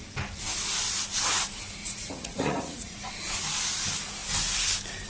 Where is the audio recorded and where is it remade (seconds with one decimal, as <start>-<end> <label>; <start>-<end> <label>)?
0.0-1.8 recorded; 1.8-3.1 remade; 3.1-5.1 recorded